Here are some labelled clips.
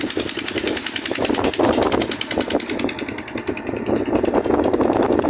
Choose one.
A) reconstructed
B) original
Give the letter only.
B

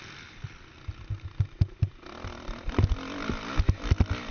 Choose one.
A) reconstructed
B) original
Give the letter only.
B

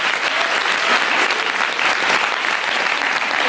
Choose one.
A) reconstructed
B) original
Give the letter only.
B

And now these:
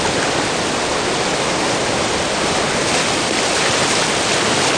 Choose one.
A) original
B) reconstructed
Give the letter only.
A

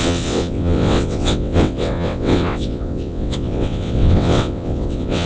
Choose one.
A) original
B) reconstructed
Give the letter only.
B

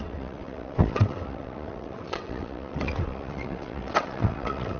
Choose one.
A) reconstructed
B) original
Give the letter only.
A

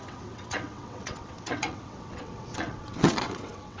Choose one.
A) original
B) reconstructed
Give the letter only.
B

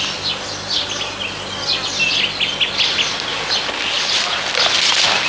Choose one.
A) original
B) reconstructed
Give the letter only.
A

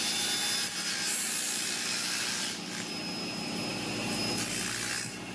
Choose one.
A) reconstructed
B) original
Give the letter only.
B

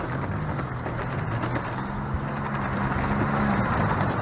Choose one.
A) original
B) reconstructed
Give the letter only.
A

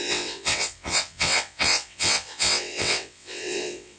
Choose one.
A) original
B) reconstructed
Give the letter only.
B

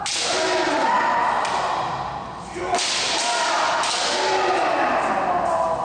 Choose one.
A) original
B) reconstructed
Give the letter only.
A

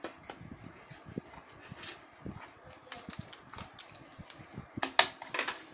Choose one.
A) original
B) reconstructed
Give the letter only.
A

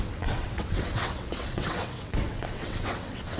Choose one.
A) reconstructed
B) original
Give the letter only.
A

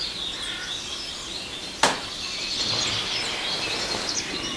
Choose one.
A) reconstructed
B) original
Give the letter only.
B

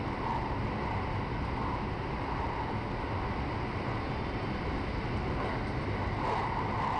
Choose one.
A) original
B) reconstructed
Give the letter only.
A